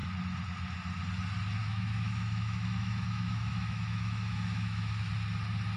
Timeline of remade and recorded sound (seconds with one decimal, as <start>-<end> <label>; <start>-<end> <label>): 0.0-1.6 recorded; 1.6-5.1 remade; 5.1-5.8 recorded